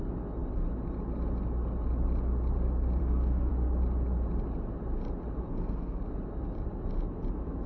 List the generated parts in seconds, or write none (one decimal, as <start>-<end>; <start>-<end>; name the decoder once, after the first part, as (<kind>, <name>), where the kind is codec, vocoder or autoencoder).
3.0-3.5 (codec, SNAC); 5.4-6.0